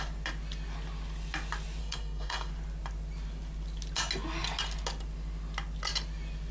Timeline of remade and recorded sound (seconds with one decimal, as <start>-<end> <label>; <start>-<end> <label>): 0.0-1.8 recorded; 1.8-2.5 remade; 2.5-6.5 recorded